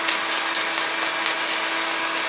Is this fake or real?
real